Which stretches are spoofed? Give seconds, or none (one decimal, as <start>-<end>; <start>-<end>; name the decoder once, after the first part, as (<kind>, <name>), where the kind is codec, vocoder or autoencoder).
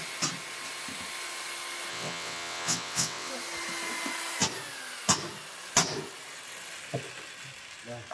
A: 1.9-3.3 (vocoder, WaveNeXt)